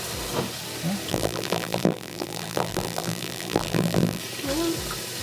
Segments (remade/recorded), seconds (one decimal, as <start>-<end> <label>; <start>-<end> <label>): 0.0-1.1 recorded; 1.1-4.2 remade; 4.2-5.2 recorded